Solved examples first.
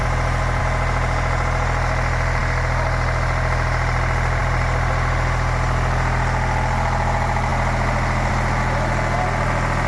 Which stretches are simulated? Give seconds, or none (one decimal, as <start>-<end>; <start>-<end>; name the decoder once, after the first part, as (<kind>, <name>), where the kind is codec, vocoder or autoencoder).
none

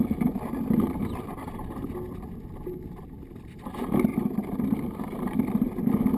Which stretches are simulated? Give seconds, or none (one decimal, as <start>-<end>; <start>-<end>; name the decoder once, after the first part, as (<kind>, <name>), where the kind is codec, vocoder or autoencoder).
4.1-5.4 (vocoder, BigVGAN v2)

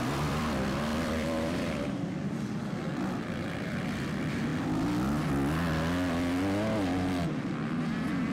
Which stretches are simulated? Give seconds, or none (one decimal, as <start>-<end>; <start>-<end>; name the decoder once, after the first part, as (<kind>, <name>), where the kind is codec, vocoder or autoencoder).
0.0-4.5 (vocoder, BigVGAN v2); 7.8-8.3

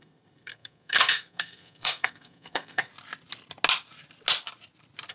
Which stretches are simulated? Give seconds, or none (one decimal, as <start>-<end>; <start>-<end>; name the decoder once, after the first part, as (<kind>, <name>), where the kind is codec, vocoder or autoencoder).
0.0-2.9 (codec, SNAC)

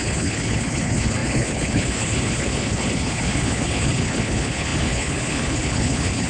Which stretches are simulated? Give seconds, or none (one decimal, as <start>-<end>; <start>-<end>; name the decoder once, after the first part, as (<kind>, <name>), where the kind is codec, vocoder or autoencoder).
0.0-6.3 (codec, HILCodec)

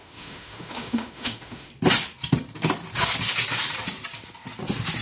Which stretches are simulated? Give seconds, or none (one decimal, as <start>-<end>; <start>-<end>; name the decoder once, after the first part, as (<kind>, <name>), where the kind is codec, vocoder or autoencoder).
0.0-1.7 (autoencoder, DAC-VAE)

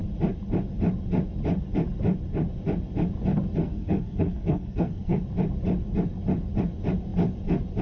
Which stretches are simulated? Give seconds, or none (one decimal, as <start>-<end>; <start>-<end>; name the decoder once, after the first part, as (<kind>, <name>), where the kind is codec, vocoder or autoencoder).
3.6-5.2 (codec, SNAC)

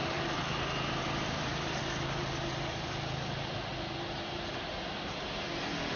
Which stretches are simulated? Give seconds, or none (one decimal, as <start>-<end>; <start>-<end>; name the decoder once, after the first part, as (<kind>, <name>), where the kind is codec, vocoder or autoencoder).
0.0-3.7 (vocoder, BigVGAN v2); 4.3-6.0